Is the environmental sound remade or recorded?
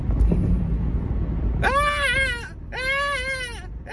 recorded